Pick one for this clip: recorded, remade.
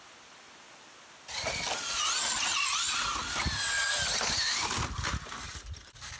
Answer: recorded